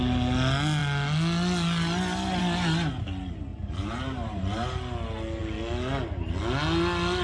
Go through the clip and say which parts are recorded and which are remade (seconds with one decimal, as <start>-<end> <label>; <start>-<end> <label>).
0.0-3.5 recorded; 3.5-4.4 remade; 4.4-7.2 recorded